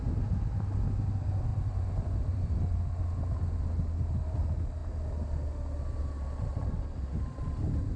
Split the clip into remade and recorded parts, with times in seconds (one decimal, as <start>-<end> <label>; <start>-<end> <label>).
0.0-1.5 recorded; 1.5-2.8 remade; 2.8-8.0 recorded